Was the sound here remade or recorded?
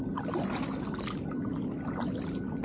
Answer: recorded